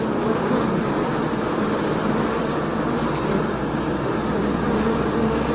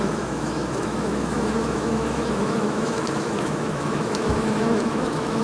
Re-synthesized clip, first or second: second